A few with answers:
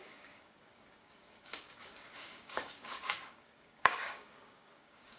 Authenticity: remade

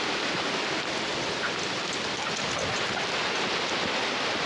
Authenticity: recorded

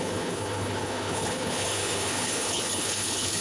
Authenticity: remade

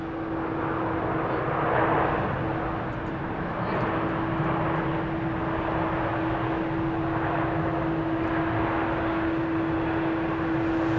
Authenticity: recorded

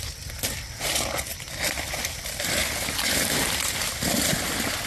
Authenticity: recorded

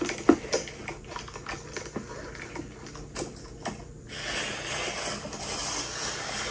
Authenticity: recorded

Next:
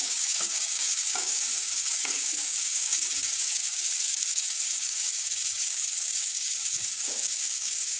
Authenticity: remade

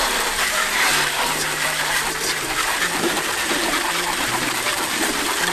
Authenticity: remade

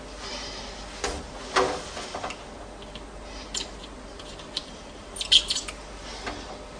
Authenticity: recorded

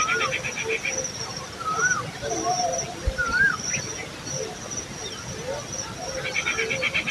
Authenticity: recorded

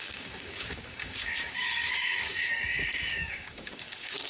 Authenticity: remade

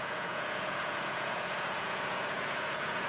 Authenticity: remade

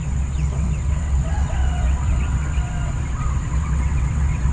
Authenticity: remade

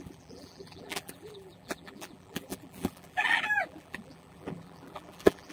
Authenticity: remade